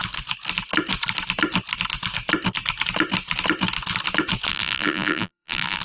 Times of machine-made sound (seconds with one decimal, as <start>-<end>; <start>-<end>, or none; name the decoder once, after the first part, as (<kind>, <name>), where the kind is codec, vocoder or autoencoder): 4.5-5.8 (vocoder, BigVGAN v2)